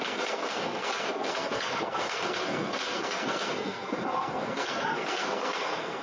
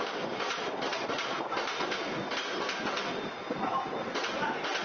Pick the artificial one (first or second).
first